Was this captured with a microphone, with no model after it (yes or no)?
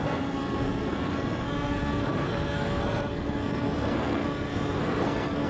no